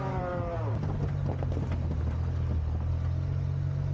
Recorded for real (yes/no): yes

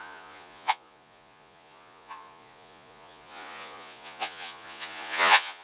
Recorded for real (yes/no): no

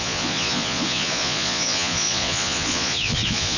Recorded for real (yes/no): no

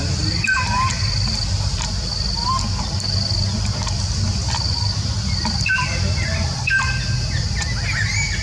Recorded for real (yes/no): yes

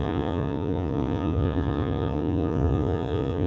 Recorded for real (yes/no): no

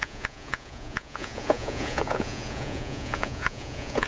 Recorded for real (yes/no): no